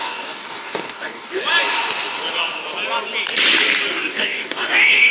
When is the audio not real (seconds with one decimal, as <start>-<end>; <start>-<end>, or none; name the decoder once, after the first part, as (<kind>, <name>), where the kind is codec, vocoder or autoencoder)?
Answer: 0.0-1.4 (codec, DAC); 3.9-5.1